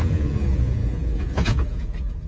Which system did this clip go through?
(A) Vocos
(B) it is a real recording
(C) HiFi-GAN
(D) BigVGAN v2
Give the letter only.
A